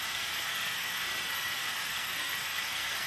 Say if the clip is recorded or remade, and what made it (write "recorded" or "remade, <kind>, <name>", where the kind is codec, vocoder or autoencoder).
remade, codec, SNAC